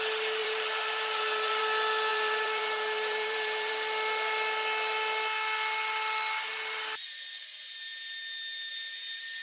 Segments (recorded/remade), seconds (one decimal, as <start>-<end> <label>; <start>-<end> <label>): 0.0-0.4 recorded; 0.4-1.6 remade; 1.6-2.1 recorded; 2.1-3.7 remade; 3.7-9.4 recorded

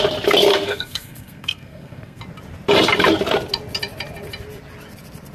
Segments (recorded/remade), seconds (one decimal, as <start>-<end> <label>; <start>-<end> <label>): 0.0-0.5 recorded; 0.5-2.2 remade; 2.2-5.3 recorded